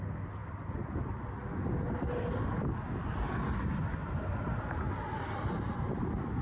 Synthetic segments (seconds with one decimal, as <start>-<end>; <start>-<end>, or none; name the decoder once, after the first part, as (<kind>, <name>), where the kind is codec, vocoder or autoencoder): none